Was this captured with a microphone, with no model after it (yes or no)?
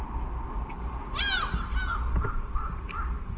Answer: yes